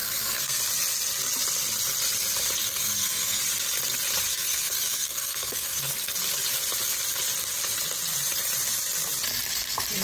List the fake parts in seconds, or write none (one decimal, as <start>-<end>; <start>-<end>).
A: 0.0-0.6; 2.6-3.4; 4.3-5.8